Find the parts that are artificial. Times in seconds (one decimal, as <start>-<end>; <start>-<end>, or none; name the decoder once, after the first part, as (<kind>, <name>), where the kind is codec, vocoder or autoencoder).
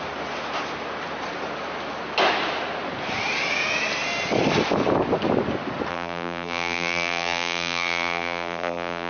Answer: 5.9-9.1 (vocoder, BigVGAN v2)